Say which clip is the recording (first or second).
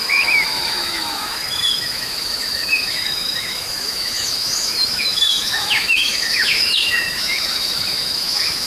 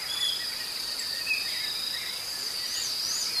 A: second